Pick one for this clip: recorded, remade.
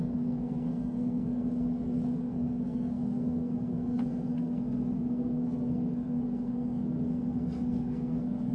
remade